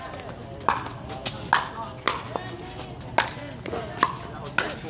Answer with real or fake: real